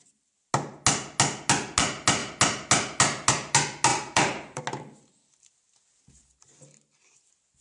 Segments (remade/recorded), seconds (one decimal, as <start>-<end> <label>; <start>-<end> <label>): 0.0-3.9 recorded; 3.9-4.6 remade; 4.6-7.6 recorded